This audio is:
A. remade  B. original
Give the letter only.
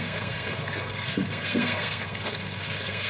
A